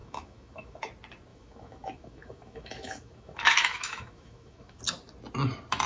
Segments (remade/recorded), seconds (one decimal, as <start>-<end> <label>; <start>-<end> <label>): 0.0-0.8 remade; 0.8-1.3 recorded; 1.3-4.8 remade; 4.8-5.9 recorded